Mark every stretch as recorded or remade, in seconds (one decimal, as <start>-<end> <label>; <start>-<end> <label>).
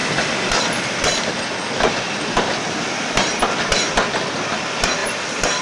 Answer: 0.0-2.9 remade; 2.9-5.0 recorded; 5.0-5.6 remade